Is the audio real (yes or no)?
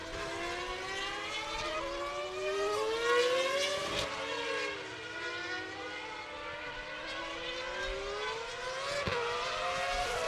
yes